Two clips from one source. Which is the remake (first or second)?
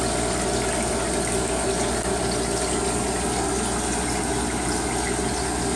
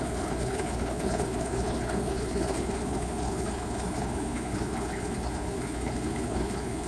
second